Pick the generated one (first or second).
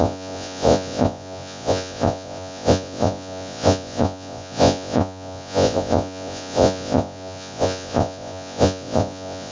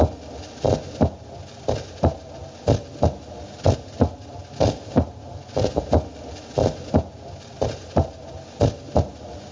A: first